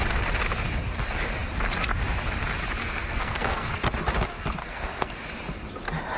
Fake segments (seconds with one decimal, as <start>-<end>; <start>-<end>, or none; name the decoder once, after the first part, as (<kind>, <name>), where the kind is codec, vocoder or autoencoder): 2.8-3.7 (codec, SNAC); 4.6-5.1